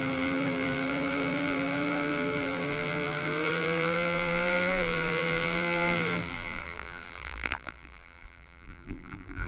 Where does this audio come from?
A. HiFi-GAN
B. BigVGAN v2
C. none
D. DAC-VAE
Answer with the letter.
B